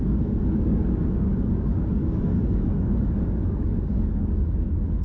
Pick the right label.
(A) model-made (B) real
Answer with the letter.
A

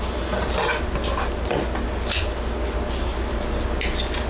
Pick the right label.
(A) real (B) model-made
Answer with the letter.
A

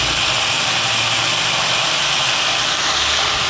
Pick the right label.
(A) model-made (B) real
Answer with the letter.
B